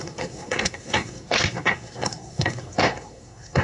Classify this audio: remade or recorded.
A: remade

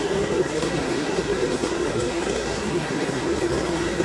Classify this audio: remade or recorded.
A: remade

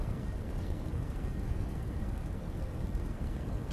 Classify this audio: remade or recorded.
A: remade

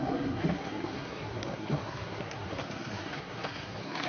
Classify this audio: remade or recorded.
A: remade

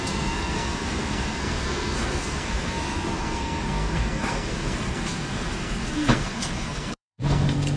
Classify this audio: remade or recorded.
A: remade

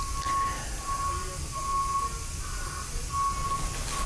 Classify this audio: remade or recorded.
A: recorded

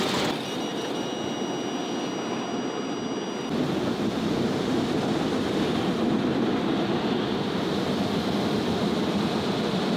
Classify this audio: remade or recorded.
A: recorded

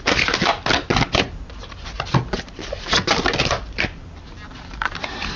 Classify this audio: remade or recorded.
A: recorded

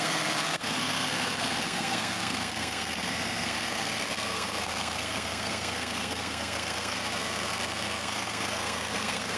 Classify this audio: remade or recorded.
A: remade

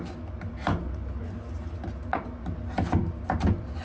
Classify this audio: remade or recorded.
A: recorded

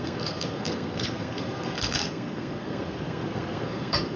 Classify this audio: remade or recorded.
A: remade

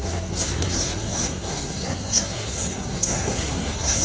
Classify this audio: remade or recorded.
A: remade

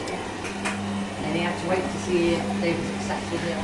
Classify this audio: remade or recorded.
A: recorded